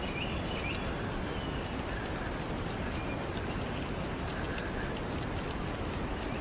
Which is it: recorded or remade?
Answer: recorded